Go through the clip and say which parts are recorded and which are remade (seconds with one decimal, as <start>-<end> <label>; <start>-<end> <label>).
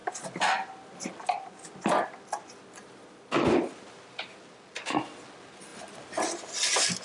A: 0.0-4.2 remade; 4.2-5.7 recorded; 5.7-6.5 remade; 6.5-7.0 recorded